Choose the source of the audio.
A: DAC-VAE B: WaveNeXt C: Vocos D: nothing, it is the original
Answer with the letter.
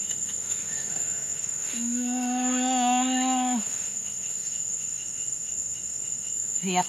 A